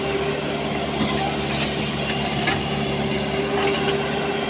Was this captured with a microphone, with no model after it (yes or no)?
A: yes